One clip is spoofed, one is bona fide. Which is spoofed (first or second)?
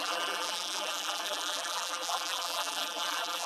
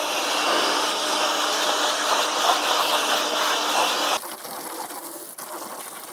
first